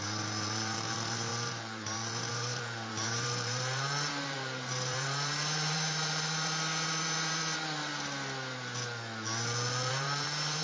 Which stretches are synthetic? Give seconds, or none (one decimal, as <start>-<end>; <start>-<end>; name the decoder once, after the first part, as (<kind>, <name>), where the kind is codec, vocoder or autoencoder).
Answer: 0.0-7.9 (vocoder, BigVGAN v2); 9.9-10.6